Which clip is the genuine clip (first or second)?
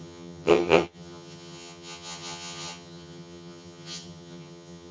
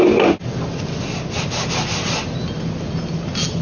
second